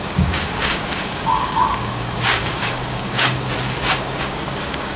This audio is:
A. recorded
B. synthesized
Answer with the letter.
B